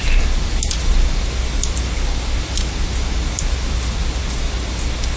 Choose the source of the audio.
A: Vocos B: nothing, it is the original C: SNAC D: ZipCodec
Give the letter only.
B